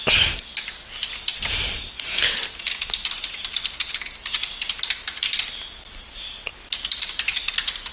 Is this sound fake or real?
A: real